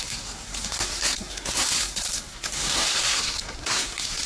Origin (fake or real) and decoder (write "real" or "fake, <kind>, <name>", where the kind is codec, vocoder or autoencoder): fake, codec, SNAC